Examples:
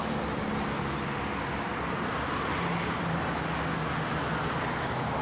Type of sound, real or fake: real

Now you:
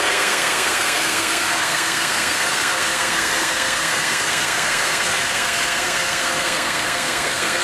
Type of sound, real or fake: fake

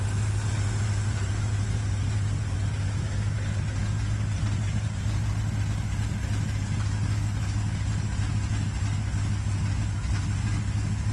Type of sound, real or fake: real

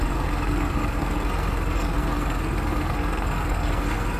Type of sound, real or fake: fake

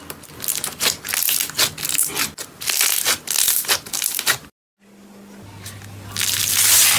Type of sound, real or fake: real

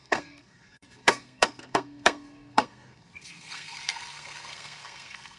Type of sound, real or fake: fake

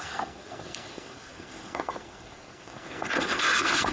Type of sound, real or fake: fake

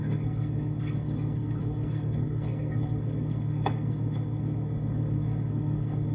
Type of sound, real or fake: fake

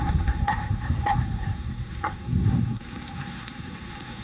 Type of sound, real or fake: fake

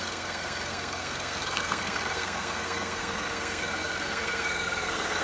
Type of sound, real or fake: fake